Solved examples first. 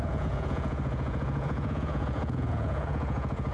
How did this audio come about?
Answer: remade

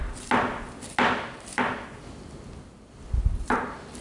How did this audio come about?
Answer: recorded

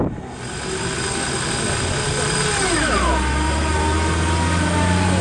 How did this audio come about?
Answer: recorded